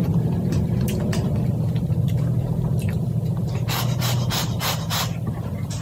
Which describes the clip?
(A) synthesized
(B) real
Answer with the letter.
A